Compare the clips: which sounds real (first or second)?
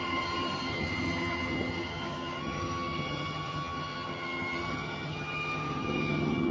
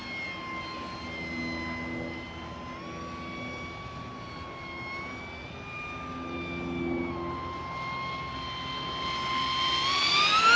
second